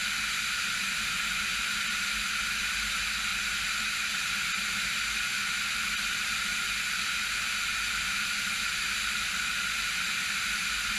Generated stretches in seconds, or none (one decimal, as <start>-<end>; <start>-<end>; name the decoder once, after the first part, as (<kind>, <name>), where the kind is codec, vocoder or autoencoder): none